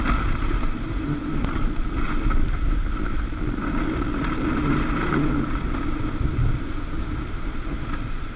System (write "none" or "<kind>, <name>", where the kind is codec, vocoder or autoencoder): none